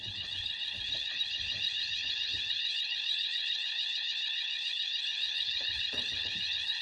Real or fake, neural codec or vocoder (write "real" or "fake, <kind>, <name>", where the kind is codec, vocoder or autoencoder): fake, codec, HILCodec